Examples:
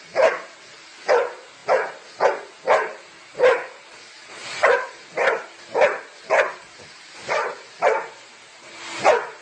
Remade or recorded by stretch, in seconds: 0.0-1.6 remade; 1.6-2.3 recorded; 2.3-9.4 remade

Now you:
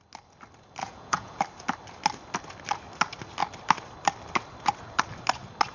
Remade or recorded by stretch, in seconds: 0.0-0.8 recorded; 0.8-1.4 remade; 1.4-5.7 recorded

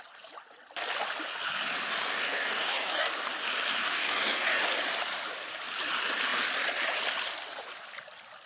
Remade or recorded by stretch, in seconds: 0.0-2.1 recorded; 2.1-3.1 remade; 3.1-3.8 recorded; 3.8-4.6 remade; 4.6-8.5 recorded

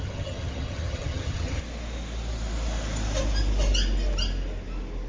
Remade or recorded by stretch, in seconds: 0.0-1.6 remade; 1.6-5.1 recorded

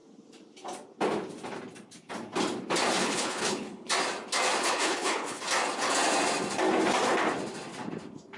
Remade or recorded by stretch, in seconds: 0.0-3.0 recorded; 3.0-3.9 remade; 3.9-4.6 recorded; 4.6-5.4 remade; 5.4-8.4 recorded

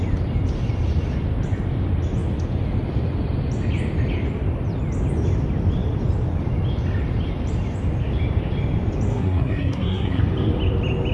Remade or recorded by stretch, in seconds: 0.0-9.1 recorded; 9.1-10.2 remade; 10.2-11.1 recorded

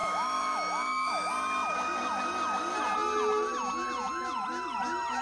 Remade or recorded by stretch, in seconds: 0.0-1.3 remade; 1.3-5.2 recorded